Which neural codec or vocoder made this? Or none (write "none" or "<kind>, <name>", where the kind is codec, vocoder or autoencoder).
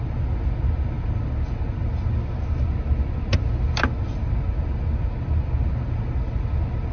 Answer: none